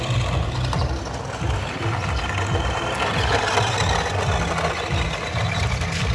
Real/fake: real